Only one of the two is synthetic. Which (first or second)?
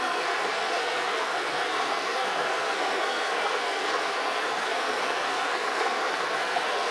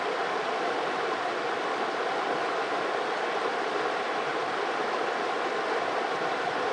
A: first